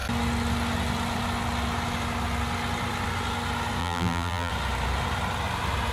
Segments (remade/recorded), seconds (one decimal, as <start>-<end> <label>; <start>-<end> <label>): 0.0-3.8 recorded; 3.8-4.5 remade; 4.5-5.9 recorded